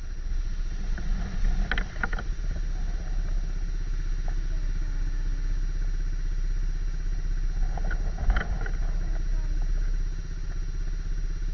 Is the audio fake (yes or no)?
no